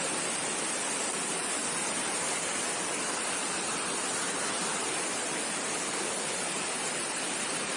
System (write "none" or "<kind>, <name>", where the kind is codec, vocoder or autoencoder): none